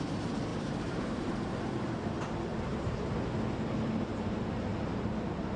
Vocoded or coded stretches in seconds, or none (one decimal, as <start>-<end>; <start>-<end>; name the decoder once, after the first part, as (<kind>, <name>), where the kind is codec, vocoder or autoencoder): 0.5-1.6 (vocoder, BigVGAN v2); 2.5-3.1; 4.7-5.6